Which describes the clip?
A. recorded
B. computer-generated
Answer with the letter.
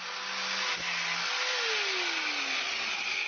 A